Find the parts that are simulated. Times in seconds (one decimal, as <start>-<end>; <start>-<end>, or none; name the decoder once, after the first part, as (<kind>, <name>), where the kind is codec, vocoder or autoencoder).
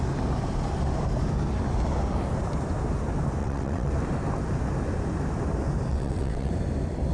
3.4-3.9 (vocoder, WaveNeXt); 5.9-6.5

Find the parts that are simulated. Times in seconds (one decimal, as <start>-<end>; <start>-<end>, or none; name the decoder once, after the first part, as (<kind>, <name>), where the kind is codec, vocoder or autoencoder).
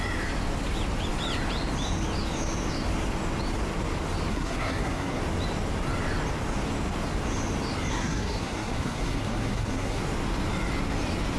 4.3-5.2 (codec, SNAC); 7.9-10.0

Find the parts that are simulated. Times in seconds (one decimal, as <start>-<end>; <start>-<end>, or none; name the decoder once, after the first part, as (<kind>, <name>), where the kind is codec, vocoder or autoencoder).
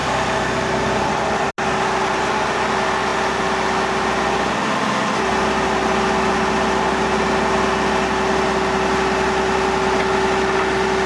0.0-1.5 (vocoder, BigVGAN v2)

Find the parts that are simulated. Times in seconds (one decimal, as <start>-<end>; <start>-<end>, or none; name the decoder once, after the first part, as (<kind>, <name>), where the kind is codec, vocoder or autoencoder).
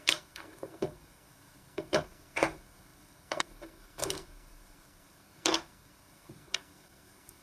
0.0-7.4 (codec, SNAC)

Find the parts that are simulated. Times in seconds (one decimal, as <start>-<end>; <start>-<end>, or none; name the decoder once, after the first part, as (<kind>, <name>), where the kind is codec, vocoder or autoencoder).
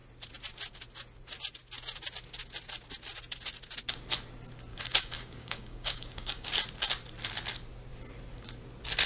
4.7-6.5 (codec, DAC)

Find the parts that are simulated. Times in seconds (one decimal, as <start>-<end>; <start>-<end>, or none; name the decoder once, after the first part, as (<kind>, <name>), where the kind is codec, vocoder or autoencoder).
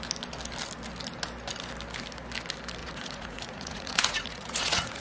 2.8-5.0 (vocoder, Vocos)